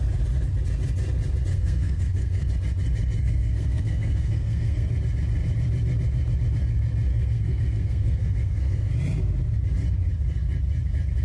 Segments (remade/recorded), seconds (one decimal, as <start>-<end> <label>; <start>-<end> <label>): 0.0-1.5 recorded; 1.5-2.5 remade; 2.5-3.2 recorded; 3.2-4.9 remade; 4.9-7.1 recorded; 7.1-8.9 remade; 8.9-11.2 recorded